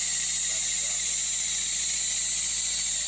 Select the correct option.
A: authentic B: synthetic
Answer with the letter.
A